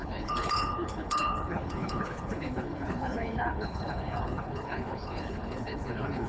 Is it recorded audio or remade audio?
remade